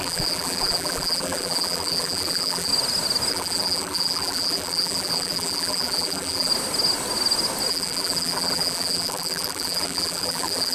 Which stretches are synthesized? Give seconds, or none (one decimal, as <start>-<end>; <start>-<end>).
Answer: 0.0-2.7; 3.3-6.5; 7.7-10.7